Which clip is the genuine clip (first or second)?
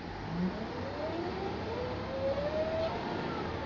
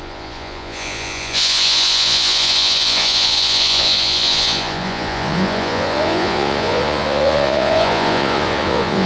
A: first